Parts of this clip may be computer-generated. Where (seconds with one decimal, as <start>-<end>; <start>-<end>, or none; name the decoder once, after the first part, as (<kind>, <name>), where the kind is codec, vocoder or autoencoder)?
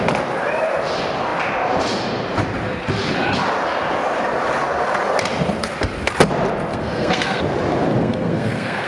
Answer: 6.7-7.4 (codec, SNAC); 8.0-8.9